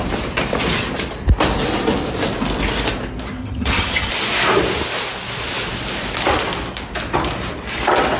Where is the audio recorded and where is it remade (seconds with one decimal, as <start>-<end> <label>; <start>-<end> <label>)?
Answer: 0.0-3.4 recorded; 3.4-4.1 remade; 4.1-8.2 recorded